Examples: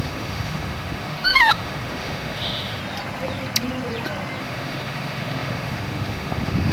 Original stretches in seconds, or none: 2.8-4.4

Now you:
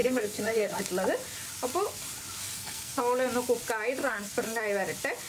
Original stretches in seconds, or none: 0.8-2.4; 3.0-4.0; 4.6-5.3

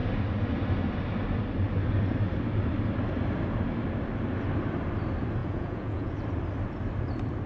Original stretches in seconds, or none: 0.0-5.4; 6.2-7.5

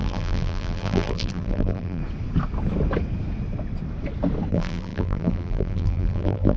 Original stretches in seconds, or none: 2.0-4.5

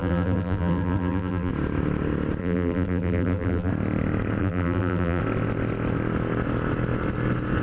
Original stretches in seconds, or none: 1.5-2.4; 3.7-4.4; 5.2-7.6

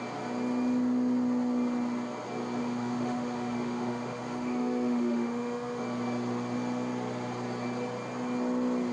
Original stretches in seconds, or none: 0.0-2.6; 5.8-8.9